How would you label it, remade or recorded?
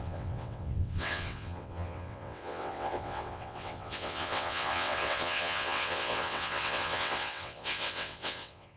remade